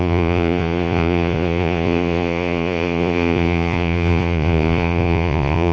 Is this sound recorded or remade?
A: remade